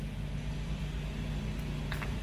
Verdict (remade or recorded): recorded